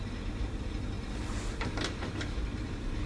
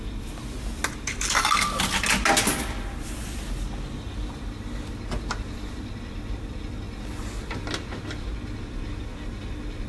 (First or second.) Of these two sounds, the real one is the second